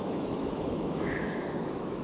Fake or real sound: fake